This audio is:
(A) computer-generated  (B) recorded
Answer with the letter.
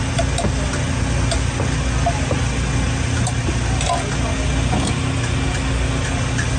B